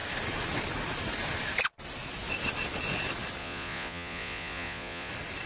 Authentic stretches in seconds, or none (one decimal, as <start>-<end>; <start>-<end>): 0.0-3.4; 5.1-5.5